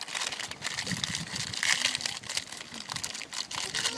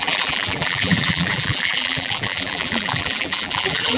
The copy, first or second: second